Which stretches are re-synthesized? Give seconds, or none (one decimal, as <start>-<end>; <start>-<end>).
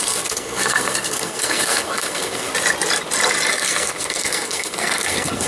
0.0-2.5; 3.5-5.5